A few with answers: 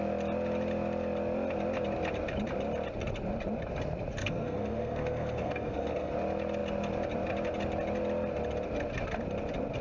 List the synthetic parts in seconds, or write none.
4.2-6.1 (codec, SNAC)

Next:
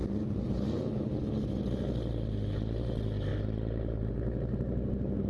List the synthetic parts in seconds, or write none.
none

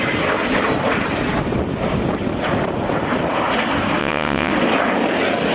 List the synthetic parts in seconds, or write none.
4.0-4.5 (vocoder, WaveNeXt)